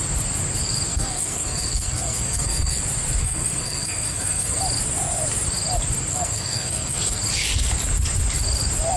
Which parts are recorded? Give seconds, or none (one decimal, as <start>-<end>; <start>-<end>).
0.0-0.9; 2.8-3.2; 4.6-6.1; 7.2-9.0